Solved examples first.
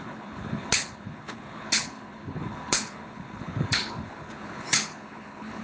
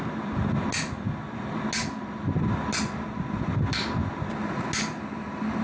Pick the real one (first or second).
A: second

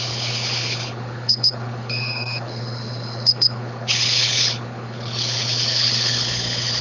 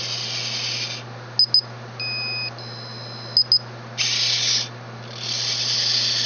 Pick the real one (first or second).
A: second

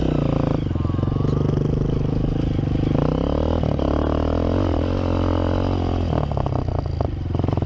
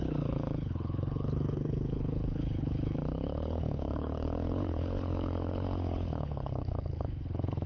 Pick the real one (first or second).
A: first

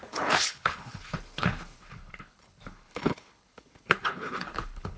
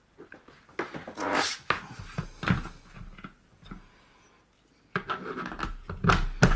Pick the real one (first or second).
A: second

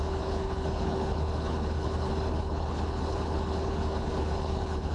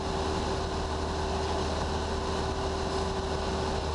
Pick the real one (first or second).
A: second